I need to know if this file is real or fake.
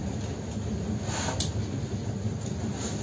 real